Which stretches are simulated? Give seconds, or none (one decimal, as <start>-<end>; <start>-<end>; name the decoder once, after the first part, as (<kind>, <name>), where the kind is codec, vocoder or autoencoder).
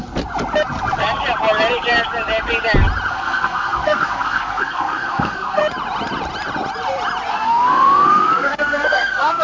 3.1-5.6 (codec, SNAC); 7.3-9.4